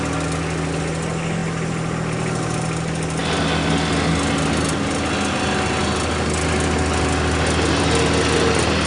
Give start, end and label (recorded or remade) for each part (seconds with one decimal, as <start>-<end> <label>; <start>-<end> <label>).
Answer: 0.0-8.9 recorded